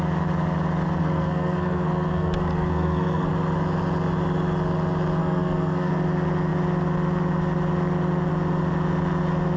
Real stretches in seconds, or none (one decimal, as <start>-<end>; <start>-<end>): 0.0-1.0; 3.3-5.2; 5.9-9.6